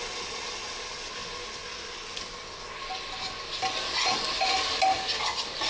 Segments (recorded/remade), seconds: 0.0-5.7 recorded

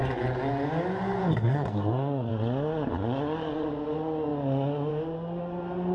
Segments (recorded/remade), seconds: 0.0-1.2 recorded; 1.2-2.3 remade; 2.3-5.9 recorded

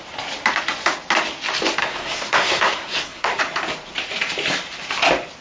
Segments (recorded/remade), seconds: 0.0-1.8 recorded; 1.8-3.4 remade; 3.4-5.4 recorded

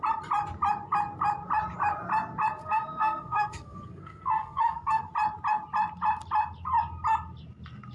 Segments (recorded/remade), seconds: 0.0-2.6 recorded; 2.6-5.0 remade; 5.0-7.9 recorded

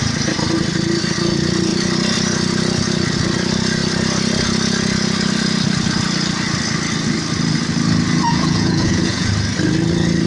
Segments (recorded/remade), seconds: 0.0-8.3 recorded; 8.3-9.3 remade; 9.3-10.3 recorded